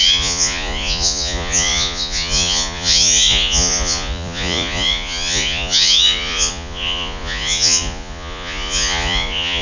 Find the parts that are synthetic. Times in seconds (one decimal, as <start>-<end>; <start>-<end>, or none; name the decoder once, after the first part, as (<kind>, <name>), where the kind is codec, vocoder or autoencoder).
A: 0.0-9.6 (vocoder, Vocos)